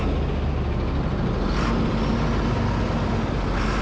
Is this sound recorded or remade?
recorded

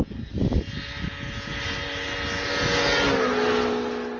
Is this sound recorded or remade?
recorded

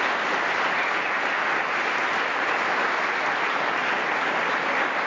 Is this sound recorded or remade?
recorded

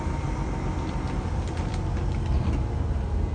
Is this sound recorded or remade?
recorded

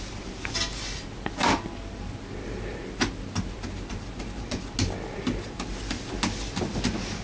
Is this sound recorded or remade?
recorded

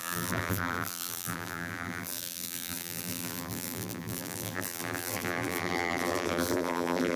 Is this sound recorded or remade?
remade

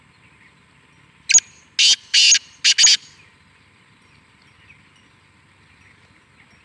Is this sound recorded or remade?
recorded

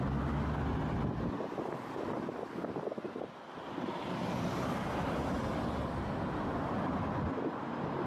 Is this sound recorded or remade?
recorded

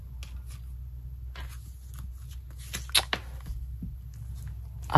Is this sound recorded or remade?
recorded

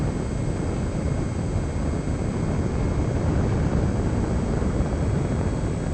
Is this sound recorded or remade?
recorded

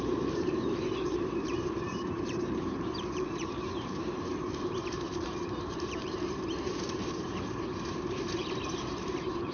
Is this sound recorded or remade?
remade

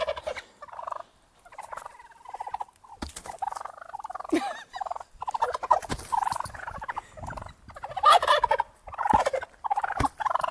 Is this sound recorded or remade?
recorded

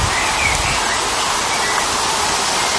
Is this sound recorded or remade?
recorded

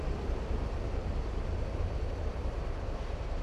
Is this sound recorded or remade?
remade